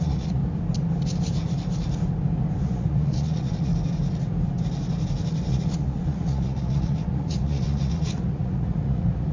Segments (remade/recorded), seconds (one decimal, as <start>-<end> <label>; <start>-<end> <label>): 0.0-0.4 remade; 0.4-2.6 recorded; 2.6-3.7 remade; 3.7-5.5 recorded; 5.5-9.3 remade

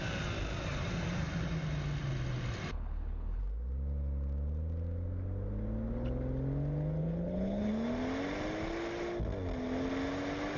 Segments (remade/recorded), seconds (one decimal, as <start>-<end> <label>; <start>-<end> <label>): 0.0-2.7 recorded; 2.7-3.4 remade; 3.4-7.0 recorded; 7.0-7.7 remade; 7.7-10.6 recorded

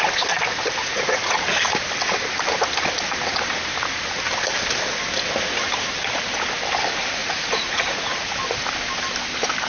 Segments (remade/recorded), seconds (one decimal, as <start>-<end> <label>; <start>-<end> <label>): 0.0-0.8 recorded; 0.8-1.4 remade; 1.4-7.2 recorded; 7.2-8.4 remade; 8.4-9.7 recorded